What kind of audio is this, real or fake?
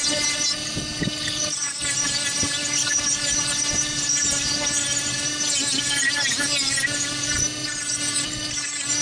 real